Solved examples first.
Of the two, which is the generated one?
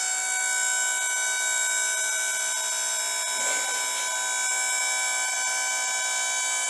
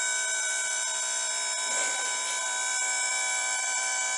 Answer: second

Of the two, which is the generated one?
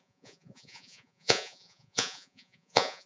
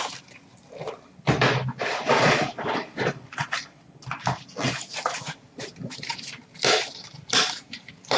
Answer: first